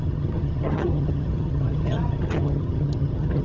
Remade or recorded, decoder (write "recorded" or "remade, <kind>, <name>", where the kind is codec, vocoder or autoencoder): remade, vocoder, HiFi-GAN